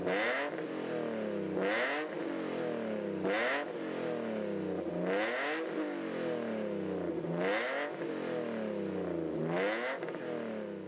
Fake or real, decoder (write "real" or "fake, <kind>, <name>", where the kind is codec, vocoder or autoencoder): real